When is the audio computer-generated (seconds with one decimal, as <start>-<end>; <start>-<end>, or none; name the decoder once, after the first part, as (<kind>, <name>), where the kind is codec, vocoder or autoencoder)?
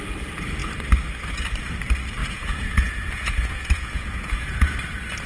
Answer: 2.2-4.8 (vocoder, Vocos)